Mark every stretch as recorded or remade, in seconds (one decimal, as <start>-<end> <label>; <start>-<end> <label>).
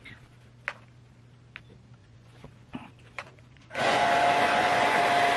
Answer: 0.0-2.0 recorded; 2.0-5.0 remade; 5.0-5.4 recorded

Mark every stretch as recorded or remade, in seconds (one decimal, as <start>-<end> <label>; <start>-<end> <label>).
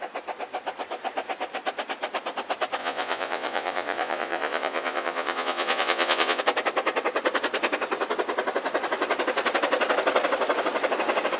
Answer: 0.0-2.8 recorded; 2.8-6.4 remade; 6.4-11.4 recorded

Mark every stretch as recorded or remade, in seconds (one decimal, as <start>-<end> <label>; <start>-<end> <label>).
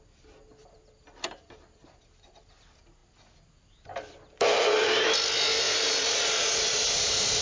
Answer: 0.0-7.4 recorded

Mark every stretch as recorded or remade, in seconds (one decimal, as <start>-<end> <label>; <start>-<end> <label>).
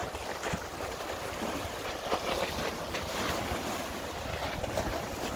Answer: 0.0-5.4 recorded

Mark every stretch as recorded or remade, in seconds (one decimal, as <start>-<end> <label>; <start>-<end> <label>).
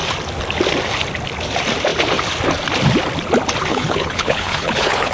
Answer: 0.0-3.7 recorded; 3.7-5.1 remade